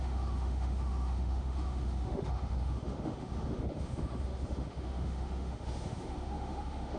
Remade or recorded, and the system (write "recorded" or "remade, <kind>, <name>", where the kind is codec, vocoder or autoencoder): remade, autoencoder, DAC-VAE